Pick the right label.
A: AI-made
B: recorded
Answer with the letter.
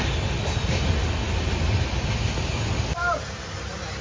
B